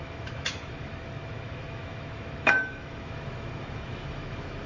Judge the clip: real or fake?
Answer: fake